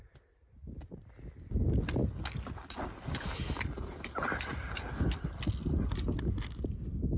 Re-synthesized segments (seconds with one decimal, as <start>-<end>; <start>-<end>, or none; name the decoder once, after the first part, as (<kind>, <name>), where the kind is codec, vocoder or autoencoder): none